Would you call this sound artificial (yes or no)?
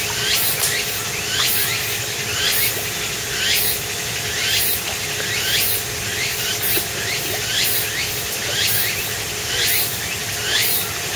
no